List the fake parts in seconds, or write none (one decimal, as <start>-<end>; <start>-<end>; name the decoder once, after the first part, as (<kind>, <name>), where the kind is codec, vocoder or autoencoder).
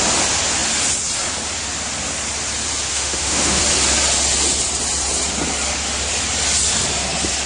2.9-3.6 (autoencoder, DAC-VAE)